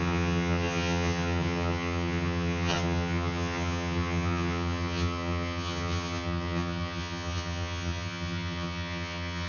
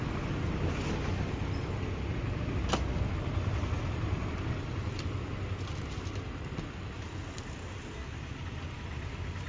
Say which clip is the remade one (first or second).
first